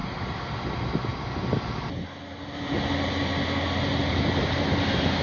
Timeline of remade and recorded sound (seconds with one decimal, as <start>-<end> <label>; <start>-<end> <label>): 0.0-0.6 remade; 0.6-5.2 recorded